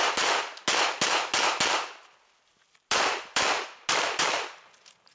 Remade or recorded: recorded